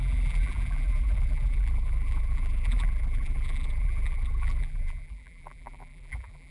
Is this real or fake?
fake